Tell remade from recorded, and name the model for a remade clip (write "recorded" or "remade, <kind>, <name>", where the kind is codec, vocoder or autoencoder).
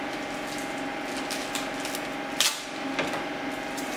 recorded